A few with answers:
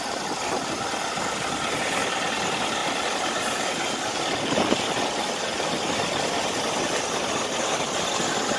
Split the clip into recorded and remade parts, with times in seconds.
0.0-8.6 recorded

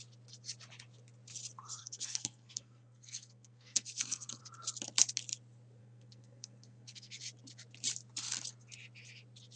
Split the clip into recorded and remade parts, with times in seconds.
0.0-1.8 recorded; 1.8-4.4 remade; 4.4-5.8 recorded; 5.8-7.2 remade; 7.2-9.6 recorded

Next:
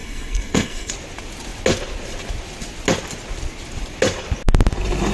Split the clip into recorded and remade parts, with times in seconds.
0.0-0.9 remade; 0.9-5.1 recorded